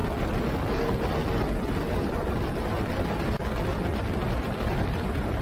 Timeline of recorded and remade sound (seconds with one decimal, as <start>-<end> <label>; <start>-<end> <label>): 0.0-5.4 recorded

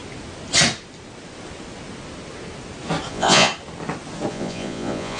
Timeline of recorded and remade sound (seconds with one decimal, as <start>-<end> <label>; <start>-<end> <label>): 0.0-3.1 recorded; 3.1-3.5 remade; 3.5-4.3 recorded; 4.3-5.2 remade

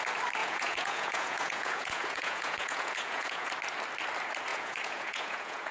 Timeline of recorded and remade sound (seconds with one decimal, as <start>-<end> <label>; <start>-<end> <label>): 0.0-0.4 recorded; 0.4-3.5 remade; 3.5-4.5 recorded; 4.5-5.7 remade